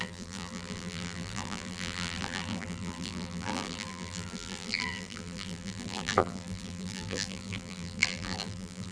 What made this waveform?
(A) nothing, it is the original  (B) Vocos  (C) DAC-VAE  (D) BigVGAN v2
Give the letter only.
D